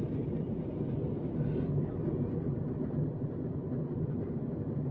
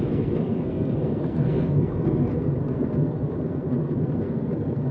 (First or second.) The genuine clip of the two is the first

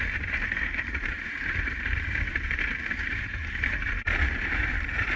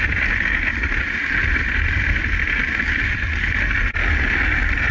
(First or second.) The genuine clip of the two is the second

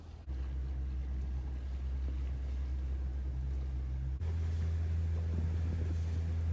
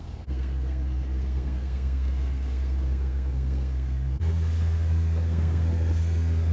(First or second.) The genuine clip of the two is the first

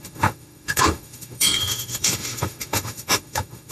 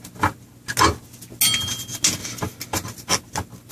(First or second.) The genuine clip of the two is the second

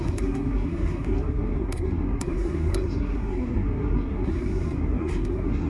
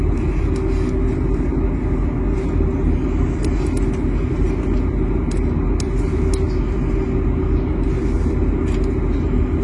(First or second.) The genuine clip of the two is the second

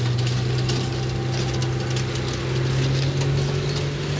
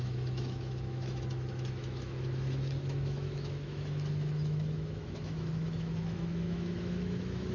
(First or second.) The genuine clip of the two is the first